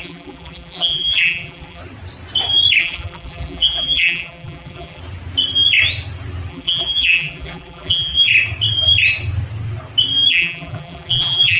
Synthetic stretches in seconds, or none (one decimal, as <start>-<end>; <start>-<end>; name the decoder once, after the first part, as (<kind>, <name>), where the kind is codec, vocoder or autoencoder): 0.0-1.8 (vocoder, BigVGAN v2); 2.8-5.0; 6.5-8.3; 10.3-11.6